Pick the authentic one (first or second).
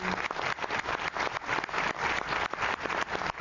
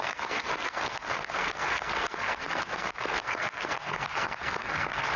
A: first